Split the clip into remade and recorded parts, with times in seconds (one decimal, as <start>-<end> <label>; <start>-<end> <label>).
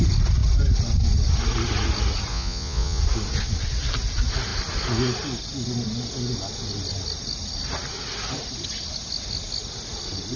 0.0-2.3 recorded; 2.3-3.0 remade; 3.0-10.4 recorded